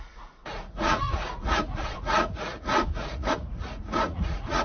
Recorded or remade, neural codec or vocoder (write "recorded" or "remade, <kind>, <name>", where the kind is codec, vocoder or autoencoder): remade, vocoder, Vocos